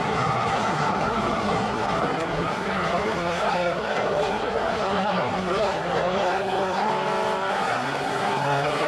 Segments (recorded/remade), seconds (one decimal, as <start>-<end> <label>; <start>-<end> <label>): 0.0-6.9 remade; 6.9-7.5 recorded; 7.5-8.9 remade